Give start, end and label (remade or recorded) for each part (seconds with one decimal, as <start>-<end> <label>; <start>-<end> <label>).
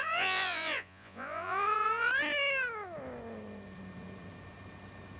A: 0.0-2.1 remade; 2.1-5.2 recorded